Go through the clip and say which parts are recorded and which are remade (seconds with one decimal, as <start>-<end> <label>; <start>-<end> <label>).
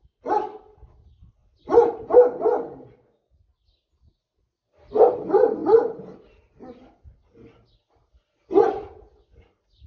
0.0-9.9 recorded